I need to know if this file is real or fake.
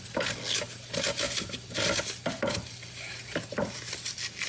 real